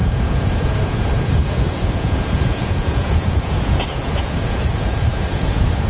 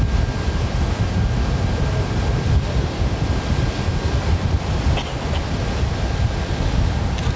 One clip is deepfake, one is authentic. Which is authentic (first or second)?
second